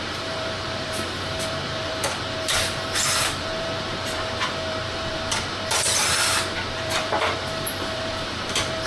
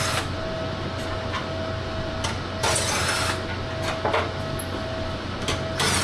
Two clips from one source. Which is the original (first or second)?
second